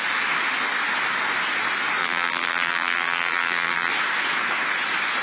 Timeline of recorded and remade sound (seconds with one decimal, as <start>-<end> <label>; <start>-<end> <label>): 0.0-2.0 recorded; 2.0-3.9 remade; 3.9-5.2 recorded